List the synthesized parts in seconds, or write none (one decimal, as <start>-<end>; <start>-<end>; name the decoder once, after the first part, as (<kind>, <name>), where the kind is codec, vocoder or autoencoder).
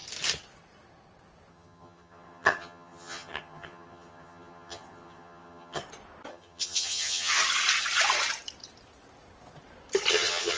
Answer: 1.5-5.8 (vocoder, HiFi-GAN); 6.3-7.4; 10.1-10.6